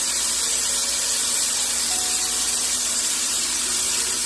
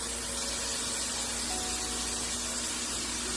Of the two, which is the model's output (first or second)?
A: first